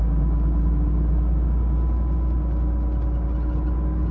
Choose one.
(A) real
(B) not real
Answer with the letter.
A